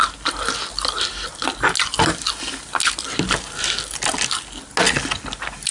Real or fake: real